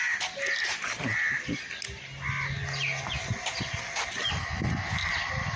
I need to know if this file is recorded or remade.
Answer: recorded